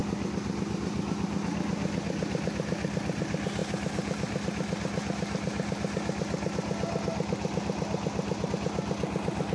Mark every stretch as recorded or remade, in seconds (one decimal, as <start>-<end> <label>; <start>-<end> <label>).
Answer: 0.0-9.5 recorded